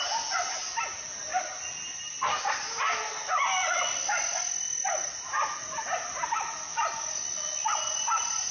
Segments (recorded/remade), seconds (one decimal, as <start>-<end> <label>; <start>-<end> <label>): 0.0-8.5 recorded